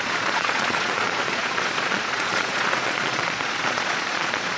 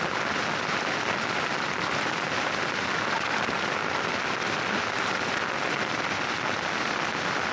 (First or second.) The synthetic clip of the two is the first